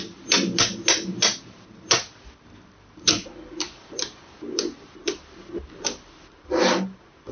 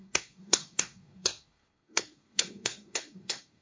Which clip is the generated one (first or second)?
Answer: second